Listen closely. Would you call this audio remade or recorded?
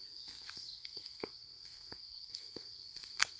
remade